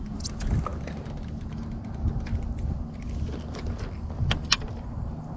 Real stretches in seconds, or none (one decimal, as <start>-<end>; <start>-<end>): 0.0-5.4